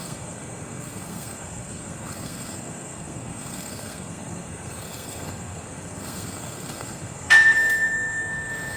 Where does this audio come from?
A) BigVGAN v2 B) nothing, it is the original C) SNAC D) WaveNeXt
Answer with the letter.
C